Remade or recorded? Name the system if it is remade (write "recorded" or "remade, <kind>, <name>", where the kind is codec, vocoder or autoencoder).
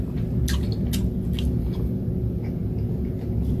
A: recorded